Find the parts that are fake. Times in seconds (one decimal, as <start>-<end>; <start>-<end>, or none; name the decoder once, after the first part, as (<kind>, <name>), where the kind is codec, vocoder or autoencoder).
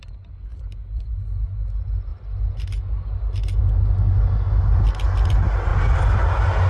0.5-1.1 (vocoder, BigVGAN v2); 5.7-6.7